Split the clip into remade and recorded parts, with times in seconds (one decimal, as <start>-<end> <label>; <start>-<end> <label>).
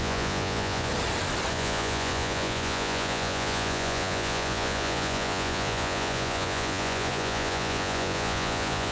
0.0-0.9 remade; 0.9-1.5 recorded; 1.5-8.9 remade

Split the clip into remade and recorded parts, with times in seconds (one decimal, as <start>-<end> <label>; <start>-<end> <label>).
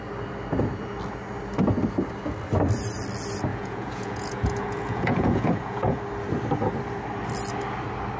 0.0-3.5 recorded; 3.5-6.0 remade; 6.0-8.2 recorded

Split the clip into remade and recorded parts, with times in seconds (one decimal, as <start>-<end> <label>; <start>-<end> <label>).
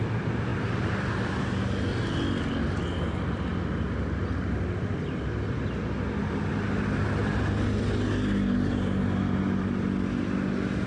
0.0-0.5 recorded; 0.5-1.1 remade; 1.1-10.9 recorded